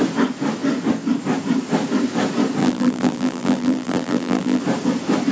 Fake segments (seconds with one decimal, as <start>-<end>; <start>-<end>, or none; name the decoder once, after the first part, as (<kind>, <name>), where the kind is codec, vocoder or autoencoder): 2.6-4.6 (vocoder, BigVGAN v2)